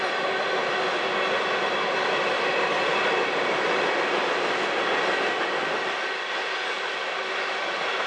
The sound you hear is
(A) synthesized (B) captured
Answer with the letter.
B